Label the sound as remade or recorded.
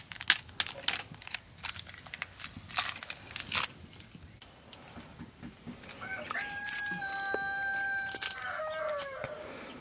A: recorded